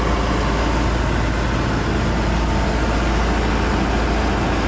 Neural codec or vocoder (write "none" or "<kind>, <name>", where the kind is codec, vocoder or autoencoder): none